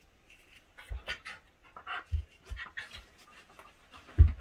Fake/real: real